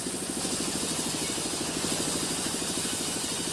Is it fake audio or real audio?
fake